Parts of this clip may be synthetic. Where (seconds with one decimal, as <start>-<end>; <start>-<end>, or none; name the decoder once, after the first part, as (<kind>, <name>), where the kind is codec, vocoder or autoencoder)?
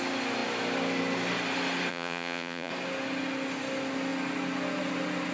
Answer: 1.9-2.7 (vocoder, Vocos)